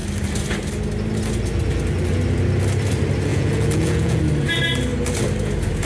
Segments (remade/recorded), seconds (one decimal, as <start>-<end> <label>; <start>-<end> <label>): 0.0-3.3 recorded; 3.3-4.2 remade; 4.2-5.9 recorded